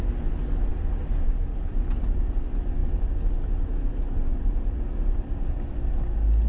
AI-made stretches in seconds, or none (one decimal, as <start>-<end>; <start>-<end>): none